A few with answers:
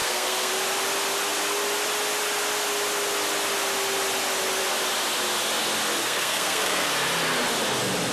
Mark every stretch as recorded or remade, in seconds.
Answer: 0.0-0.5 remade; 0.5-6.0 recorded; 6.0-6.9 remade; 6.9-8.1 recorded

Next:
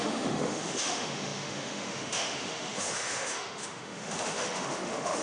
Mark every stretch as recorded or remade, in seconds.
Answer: 0.0-5.2 remade

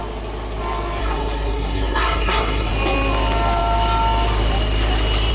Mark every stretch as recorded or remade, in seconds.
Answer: 0.0-1.0 recorded; 1.0-2.7 remade; 2.7-5.3 recorded

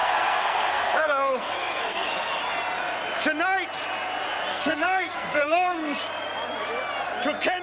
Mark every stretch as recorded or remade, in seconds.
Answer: 0.0-2.4 remade; 2.4-4.5 recorded; 4.5-6.0 remade; 6.0-7.6 recorded

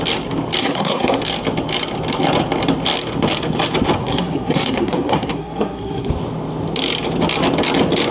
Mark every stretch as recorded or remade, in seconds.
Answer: 0.0-0.6 recorded; 0.6-1.2 remade; 1.2-4.0 recorded; 4.0-6.1 remade; 6.1-8.1 recorded